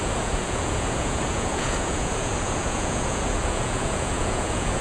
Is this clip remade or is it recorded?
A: remade